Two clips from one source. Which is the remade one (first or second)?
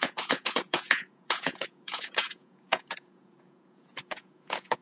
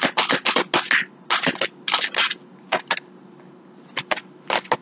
first